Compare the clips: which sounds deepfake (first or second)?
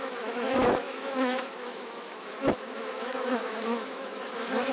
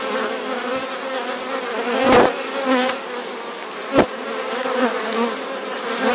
first